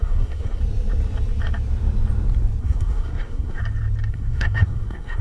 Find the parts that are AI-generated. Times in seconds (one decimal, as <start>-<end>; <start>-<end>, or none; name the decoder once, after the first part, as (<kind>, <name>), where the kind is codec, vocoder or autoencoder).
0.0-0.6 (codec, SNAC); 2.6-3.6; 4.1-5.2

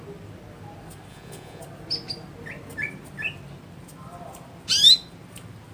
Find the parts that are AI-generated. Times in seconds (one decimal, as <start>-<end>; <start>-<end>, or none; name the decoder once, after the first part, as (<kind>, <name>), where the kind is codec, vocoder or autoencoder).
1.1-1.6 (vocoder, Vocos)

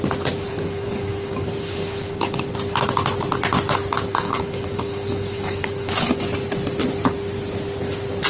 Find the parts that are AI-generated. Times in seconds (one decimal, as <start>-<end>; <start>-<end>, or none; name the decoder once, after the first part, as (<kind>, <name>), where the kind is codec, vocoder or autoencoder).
0.5-2.5 (codec, DAC); 4.1-6.1